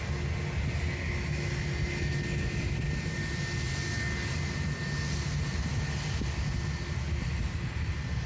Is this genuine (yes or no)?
yes